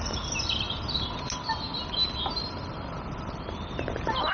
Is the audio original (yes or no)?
yes